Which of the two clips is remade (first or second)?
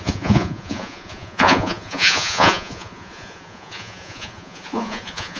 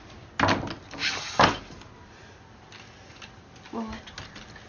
first